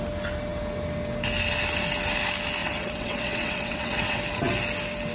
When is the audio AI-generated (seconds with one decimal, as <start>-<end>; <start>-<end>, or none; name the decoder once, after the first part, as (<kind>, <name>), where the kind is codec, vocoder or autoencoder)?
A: 2.6-4.2 (vocoder, WaveNeXt)